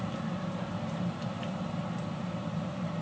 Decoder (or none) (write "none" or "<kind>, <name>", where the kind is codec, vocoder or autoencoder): none